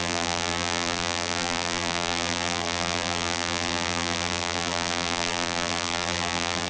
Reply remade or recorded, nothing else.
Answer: remade